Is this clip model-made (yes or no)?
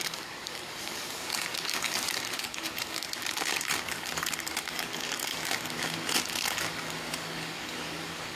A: yes